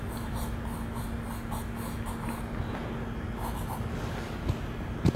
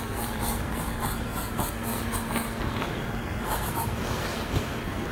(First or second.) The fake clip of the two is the second